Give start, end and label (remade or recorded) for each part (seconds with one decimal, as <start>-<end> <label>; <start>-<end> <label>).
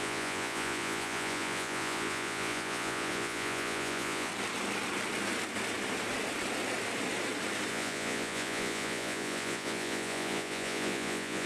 0.0-4.3 remade; 4.3-7.7 recorded; 7.7-11.5 remade